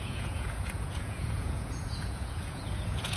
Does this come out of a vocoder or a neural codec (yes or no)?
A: yes